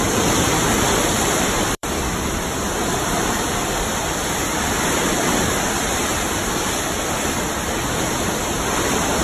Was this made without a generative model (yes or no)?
no